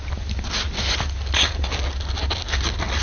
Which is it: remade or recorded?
recorded